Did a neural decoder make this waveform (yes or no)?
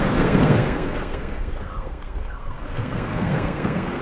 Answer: yes